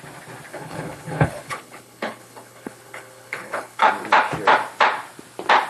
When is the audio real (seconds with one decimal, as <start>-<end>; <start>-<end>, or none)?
0.0-0.5; 3.9-5.7